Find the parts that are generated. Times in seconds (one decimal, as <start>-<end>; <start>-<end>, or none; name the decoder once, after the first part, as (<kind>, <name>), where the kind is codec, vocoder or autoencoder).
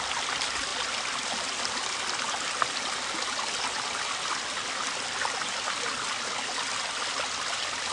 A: none